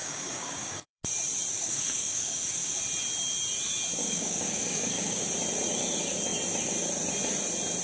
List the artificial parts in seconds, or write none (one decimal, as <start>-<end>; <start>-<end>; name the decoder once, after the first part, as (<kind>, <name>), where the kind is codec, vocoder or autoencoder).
0.0-1.0 (codec, DAC); 1.5-2.8; 4.0-5.2